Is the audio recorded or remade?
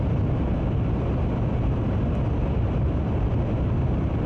recorded